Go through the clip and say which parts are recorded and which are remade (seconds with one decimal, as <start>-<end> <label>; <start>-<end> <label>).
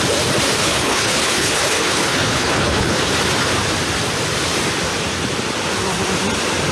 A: 0.0-0.6 recorded; 0.6-3.1 remade; 3.1-6.7 recorded